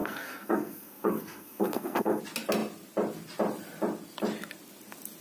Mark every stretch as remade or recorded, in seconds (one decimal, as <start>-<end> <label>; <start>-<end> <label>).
0.0-2.2 remade; 2.2-5.2 recorded